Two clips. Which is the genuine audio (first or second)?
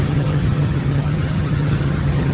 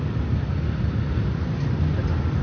second